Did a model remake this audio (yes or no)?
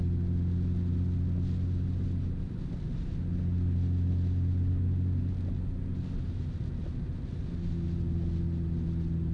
no